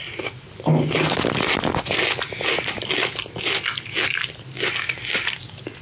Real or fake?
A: real